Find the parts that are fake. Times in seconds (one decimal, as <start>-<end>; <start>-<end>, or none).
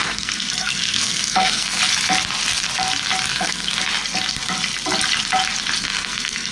0.0-1.8; 3.3-3.7; 5.8-6.5